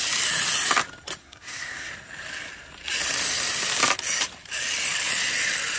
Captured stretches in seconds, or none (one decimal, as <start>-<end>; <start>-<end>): 0.0-1.2; 1.9-5.8